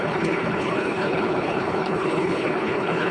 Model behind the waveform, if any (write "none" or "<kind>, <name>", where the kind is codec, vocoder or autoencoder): codec, HILCodec